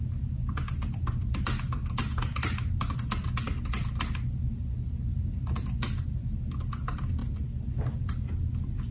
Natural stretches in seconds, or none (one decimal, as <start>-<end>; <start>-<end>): 0.0-8.9